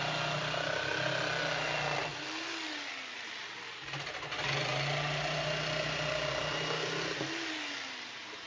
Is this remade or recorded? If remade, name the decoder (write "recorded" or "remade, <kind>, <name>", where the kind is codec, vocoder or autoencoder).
recorded